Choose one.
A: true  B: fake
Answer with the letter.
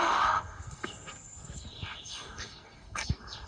B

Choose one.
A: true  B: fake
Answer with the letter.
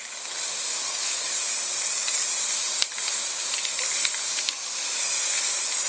A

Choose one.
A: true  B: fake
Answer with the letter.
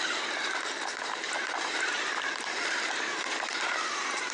A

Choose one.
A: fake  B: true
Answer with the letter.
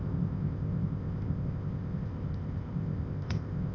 A